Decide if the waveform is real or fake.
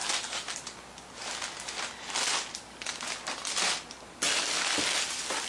fake